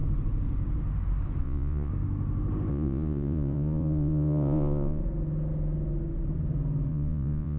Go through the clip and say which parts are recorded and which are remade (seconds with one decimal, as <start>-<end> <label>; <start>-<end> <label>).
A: 0.0-1.4 recorded; 1.4-1.9 remade; 1.9-2.7 recorded; 2.7-5.0 remade; 5.0-6.9 recorded; 6.9-7.6 remade